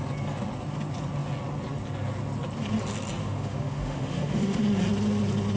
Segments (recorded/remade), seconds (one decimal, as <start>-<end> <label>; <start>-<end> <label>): 0.0-3.2 recorded; 3.2-4.6 remade; 4.6-5.6 recorded